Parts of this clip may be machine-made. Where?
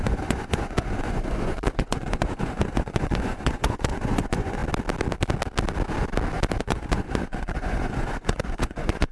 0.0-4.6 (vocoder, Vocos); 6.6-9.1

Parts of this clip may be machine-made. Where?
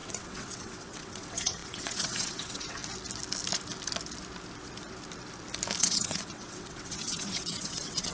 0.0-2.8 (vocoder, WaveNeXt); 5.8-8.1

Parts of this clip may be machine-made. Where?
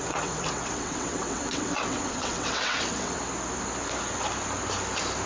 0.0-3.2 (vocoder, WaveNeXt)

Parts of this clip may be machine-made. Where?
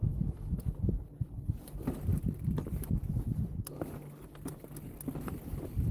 2.1-2.8 (vocoder, BigVGAN v2)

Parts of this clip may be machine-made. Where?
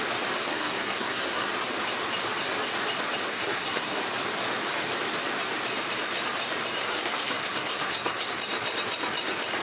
0.5-1.5 (codec, SNAC); 3.3-4.0; 6.8-8.3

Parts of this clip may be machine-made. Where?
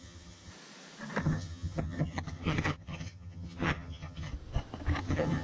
0.0-0.5 (vocoder, HiFi-GAN); 1.2-4.3; 5.0-5.4